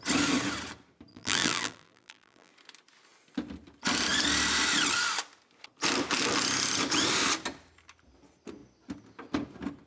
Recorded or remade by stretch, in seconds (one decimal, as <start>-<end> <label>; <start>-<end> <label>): 0.0-1.1 recorded; 1.1-2.5 remade; 2.5-9.9 recorded